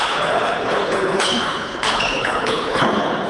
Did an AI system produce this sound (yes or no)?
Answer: yes